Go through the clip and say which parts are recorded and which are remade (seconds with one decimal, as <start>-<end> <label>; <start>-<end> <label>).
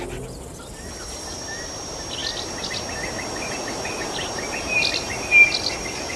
0.0-6.2 recorded